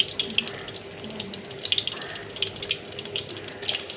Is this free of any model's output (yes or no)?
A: yes